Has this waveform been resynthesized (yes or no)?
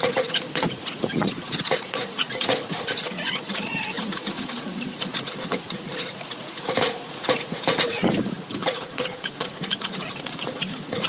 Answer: yes